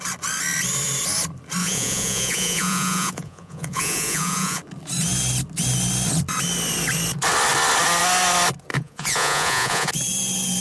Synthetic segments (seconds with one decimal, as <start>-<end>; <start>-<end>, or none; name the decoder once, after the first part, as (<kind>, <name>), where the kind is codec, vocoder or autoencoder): 1.6-4.6 (vocoder, Vocos); 8.7-9.9